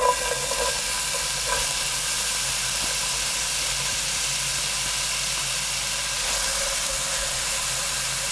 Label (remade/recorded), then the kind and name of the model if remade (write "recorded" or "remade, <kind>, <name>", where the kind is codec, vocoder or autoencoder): recorded